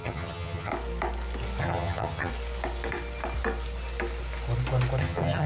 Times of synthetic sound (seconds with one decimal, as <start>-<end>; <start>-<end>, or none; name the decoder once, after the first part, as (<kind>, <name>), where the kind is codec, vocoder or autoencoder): 0.0-0.7 (vocoder, HiFi-GAN); 1.6-2.3; 5.0-5.5